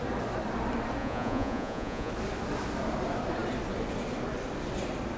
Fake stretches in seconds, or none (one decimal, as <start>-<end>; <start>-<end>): 1.0-2.1